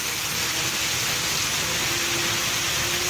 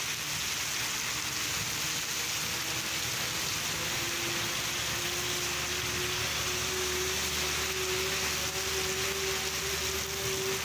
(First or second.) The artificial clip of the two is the first